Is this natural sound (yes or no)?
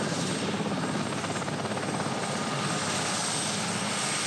yes